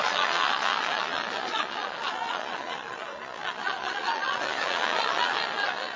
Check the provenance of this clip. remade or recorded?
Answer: remade